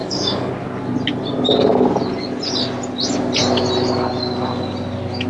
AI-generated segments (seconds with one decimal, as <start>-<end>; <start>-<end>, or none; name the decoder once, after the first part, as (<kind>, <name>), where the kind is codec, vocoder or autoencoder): 0.0-0.5 (codec, DAC)